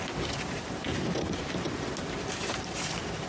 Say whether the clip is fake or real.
real